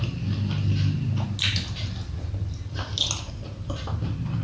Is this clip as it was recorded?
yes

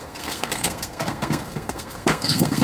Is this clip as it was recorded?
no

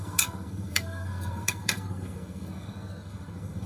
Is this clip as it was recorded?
no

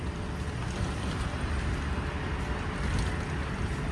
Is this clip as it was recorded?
yes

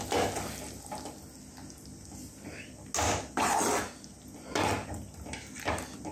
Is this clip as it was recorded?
yes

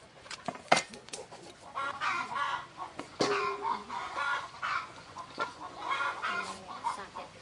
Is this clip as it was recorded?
no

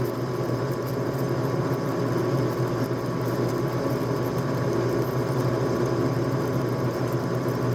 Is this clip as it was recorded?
yes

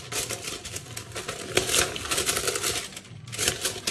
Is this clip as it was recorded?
yes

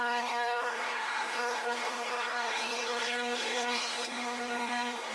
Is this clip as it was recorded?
no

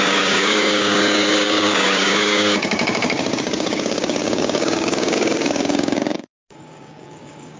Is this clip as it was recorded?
no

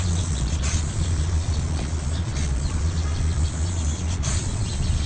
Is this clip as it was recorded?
no